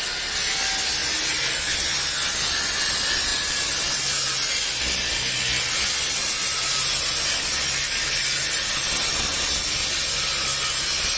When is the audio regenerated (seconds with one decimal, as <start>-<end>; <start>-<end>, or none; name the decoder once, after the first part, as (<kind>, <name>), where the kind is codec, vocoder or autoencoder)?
none